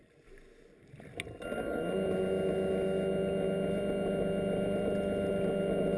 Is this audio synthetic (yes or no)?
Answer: no